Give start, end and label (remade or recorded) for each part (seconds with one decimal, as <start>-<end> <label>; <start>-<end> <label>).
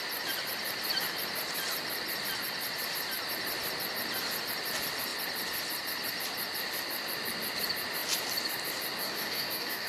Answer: 0.0-9.0 recorded; 9.0-9.9 remade